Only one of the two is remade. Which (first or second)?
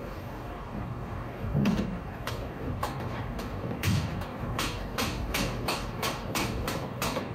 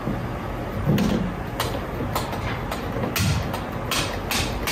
first